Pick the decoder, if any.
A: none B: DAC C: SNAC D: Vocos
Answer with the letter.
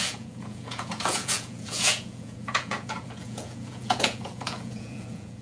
D